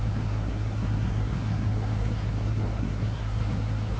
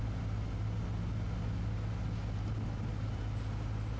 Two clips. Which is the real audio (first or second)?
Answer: second